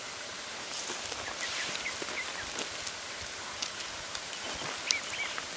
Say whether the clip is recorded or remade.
recorded